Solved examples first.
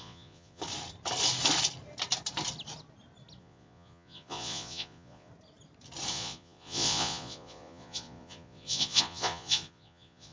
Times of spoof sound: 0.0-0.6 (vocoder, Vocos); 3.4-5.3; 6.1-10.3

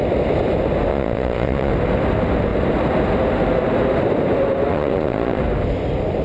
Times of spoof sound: 0.9-1.7 (vocoder, Vocos); 4.7-5.4

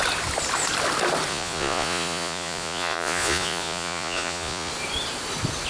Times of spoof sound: 1.3-4.7 (vocoder, Vocos)

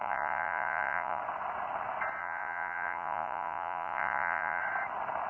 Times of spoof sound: 0.0-1.2 (vocoder, Vocos); 2.2-4.6

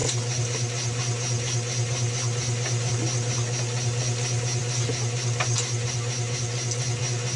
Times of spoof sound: none

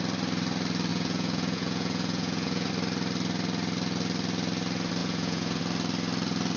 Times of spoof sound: 0.9-2.7 (vocoder, Vocos); 5.0-5.6

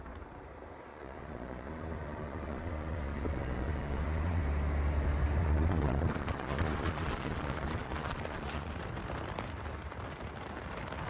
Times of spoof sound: 0.9-4.4 (vocoder, Vocos); 5.4-8.7

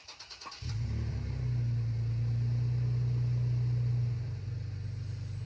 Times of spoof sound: 0.0-0.5 (vocoder, Vocos)